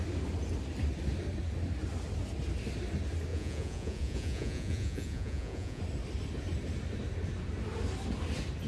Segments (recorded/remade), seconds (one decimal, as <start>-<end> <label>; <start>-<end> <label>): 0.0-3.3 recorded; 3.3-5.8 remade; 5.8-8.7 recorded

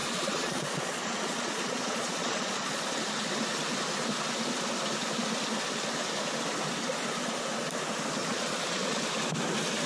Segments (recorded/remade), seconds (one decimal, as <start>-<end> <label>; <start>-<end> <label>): 0.0-3.1 remade; 3.1-8.2 recorded; 8.2-9.0 remade; 9.0-9.9 recorded

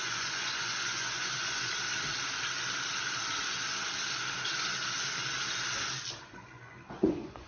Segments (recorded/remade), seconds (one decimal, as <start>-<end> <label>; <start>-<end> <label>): 0.0-1.7 remade; 1.7-6.2 recorded; 6.2-7.5 remade

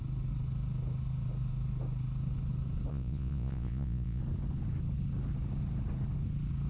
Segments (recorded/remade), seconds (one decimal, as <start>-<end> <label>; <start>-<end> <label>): 0.0-2.9 recorded; 2.9-4.2 remade; 4.2-6.7 recorded

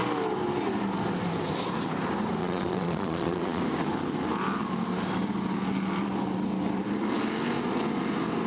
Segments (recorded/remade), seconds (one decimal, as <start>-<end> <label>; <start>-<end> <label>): 0.0-2.4 recorded; 2.4-3.6 remade; 3.6-8.5 recorded

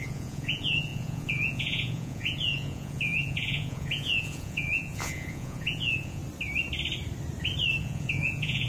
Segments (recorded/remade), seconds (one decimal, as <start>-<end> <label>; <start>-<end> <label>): 0.0-6.2 remade; 6.2-7.8 recorded; 7.8-8.7 remade

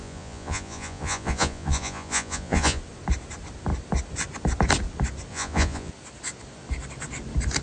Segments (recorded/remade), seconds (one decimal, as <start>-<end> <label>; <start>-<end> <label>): 0.0-2.8 remade; 2.8-5.3 recorded; 5.3-5.9 remade; 5.9-7.6 recorded

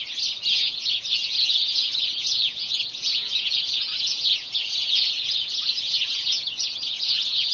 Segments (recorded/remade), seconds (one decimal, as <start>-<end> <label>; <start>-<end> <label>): 0.0-0.5 recorded; 0.5-7.5 remade